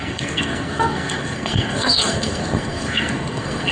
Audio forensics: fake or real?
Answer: fake